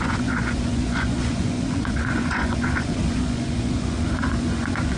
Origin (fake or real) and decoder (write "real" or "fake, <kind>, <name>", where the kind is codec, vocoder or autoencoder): fake, vocoder, Vocos